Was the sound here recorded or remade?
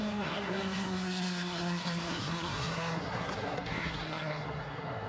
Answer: remade